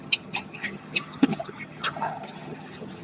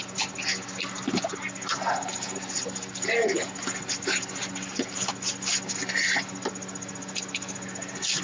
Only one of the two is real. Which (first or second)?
second